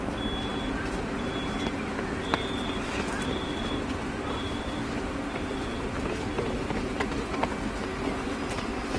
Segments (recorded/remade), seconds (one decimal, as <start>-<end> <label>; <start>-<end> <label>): 0.0-7.9 remade; 7.9-8.5 recorded; 8.5-9.0 remade